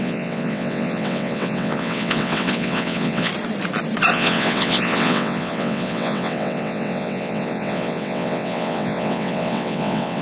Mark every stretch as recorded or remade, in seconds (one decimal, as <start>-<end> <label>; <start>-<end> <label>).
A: 0.0-3.3 remade; 3.3-4.1 recorded; 4.1-10.2 remade

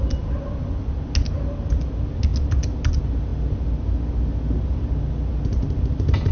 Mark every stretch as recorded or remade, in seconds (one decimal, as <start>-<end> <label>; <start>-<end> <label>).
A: 0.0-6.3 recorded

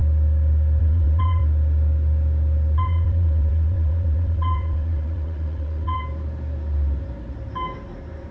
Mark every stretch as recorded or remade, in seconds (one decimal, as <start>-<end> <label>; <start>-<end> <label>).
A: 0.0-0.8 recorded; 0.8-1.4 remade; 1.4-2.8 recorded; 2.8-6.0 remade; 6.0-8.3 recorded

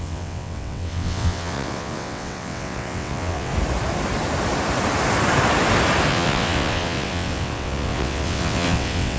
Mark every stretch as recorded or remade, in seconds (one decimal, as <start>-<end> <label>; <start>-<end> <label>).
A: 0.0-3.5 remade; 3.5-6.1 recorded; 6.1-9.2 remade

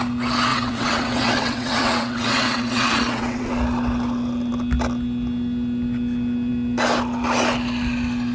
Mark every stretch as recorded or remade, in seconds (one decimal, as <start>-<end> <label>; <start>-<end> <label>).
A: 0.0-0.5 recorded; 0.5-3.5 remade; 3.5-8.3 recorded

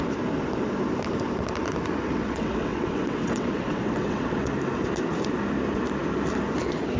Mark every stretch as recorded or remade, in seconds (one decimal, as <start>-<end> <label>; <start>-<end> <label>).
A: 0.0-2.1 recorded; 2.1-4.4 remade; 4.4-7.0 recorded

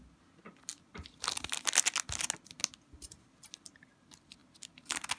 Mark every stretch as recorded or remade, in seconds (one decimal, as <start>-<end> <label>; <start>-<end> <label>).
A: 0.0-5.2 recorded

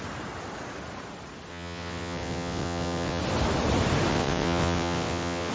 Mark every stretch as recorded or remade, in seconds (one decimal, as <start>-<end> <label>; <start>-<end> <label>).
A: 0.0-1.5 recorded; 1.5-3.2 remade; 3.2-4.1 recorded; 4.1-5.5 remade